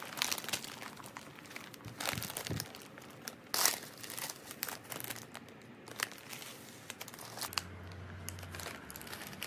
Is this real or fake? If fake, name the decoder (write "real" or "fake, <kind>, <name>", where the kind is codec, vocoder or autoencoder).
real